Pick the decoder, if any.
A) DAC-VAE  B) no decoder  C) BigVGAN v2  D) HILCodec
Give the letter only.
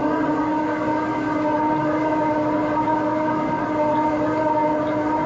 B